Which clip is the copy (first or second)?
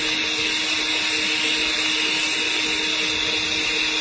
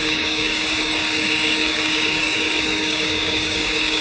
second